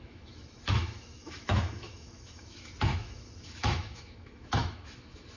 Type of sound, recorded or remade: remade